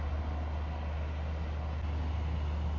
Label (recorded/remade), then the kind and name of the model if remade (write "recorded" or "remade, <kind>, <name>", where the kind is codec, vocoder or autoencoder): recorded